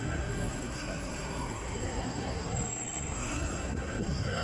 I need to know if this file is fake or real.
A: fake